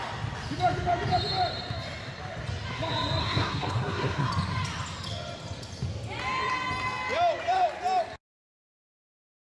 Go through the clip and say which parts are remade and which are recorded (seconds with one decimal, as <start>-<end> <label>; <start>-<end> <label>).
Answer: 0.0-3.2 recorded; 3.2-4.3 remade; 4.3-9.5 recorded